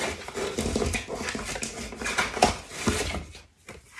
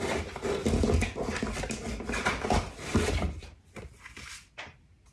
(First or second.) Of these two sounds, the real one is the first